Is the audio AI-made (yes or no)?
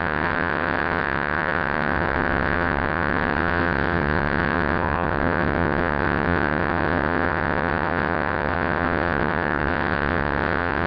yes